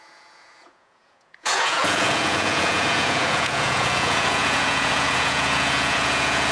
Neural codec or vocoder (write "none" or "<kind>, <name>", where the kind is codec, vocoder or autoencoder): vocoder, Vocos